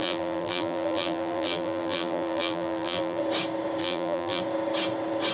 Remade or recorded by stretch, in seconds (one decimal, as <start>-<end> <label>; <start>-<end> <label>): 0.0-3.2 remade; 3.2-3.8 recorded; 3.8-4.4 remade; 4.4-5.3 recorded